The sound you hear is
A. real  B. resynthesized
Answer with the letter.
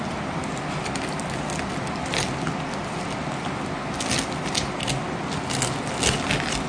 A